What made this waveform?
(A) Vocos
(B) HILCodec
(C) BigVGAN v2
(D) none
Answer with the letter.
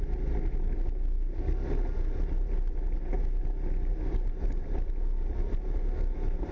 D